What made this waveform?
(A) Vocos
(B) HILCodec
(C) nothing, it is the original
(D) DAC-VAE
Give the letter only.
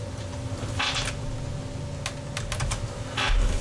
C